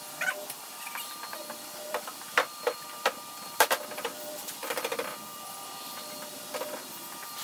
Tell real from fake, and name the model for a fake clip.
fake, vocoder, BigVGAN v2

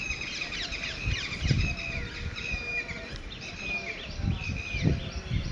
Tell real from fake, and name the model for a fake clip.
fake, vocoder, BigVGAN v2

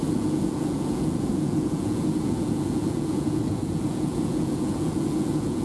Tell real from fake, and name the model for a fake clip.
fake, vocoder, Vocos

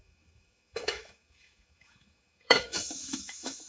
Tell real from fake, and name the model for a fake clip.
fake, autoencoder, DAC-VAE